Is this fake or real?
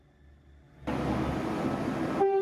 real